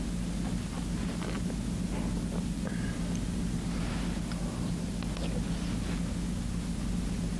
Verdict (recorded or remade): recorded